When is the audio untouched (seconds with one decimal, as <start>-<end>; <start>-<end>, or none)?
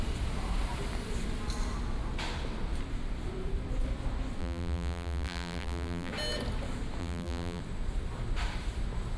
0.0-4.4; 6.1-7.0; 7.6-9.2